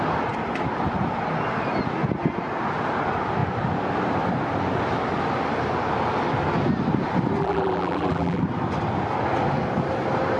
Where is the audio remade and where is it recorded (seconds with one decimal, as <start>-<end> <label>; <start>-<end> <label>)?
0.0-7.4 recorded; 7.4-8.4 remade; 8.4-10.4 recorded